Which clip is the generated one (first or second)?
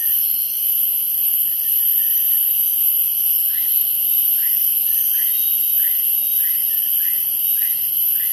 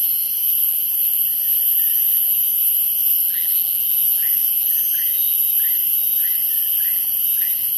second